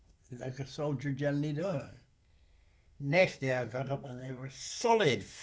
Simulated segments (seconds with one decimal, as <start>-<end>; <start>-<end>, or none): 0.0-0.5; 1.6-5.4

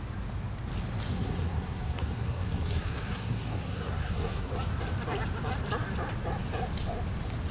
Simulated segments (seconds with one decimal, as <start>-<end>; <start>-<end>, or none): 1.1-4.5

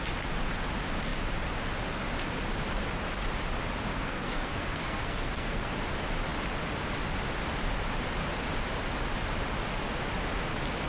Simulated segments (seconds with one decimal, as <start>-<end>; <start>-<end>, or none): 3.9-5.7

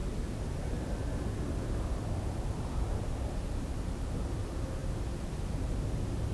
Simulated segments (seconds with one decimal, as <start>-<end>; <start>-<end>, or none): none

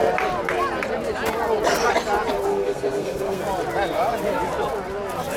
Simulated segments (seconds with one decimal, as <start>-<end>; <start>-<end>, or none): 2.5-3.4

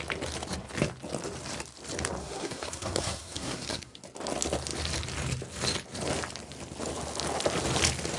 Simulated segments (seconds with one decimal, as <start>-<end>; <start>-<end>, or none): 2.2-4.0

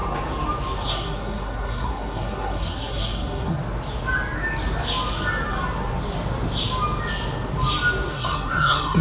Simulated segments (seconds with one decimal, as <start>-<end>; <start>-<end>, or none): 0.9-3.6; 8.1-9.0

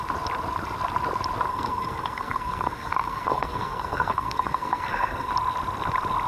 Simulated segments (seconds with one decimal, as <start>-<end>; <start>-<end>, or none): 1.5-5.3